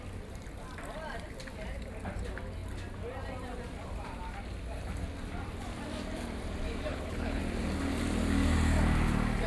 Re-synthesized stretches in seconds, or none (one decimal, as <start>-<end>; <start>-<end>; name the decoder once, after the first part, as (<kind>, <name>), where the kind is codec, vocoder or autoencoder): 6.9-7.4 (codec, HILCodec)